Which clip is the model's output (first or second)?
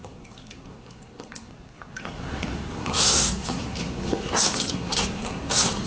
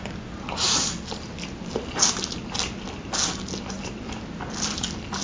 first